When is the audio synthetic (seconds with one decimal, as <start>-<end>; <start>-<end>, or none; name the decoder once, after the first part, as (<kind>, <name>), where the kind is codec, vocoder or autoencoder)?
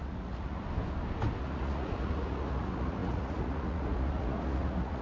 0.0-0.6 (vocoder, Vocos); 1.4-5.0